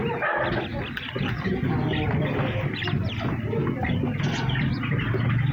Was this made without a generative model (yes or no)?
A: yes